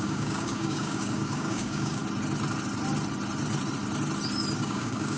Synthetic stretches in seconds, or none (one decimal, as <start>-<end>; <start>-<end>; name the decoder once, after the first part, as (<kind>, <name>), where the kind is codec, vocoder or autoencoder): 0.0-2.0 (codec, DAC); 4.6-5.2